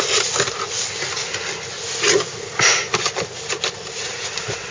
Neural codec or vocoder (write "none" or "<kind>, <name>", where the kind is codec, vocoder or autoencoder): none